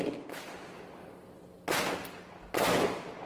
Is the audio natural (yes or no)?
yes